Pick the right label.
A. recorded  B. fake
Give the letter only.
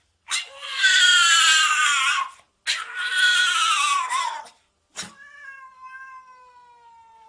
A